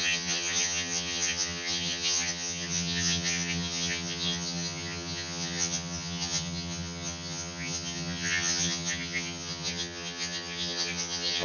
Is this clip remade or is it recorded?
remade